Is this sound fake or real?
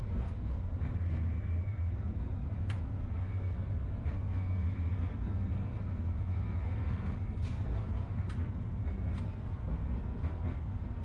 fake